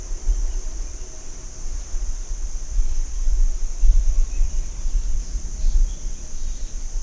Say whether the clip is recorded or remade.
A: recorded